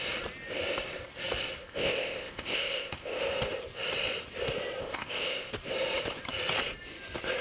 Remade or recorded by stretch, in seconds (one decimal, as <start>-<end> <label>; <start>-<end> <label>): 0.0-1.6 recorded; 1.6-3.2 remade; 3.2-4.8 recorded; 4.8-5.5 remade; 5.5-7.4 recorded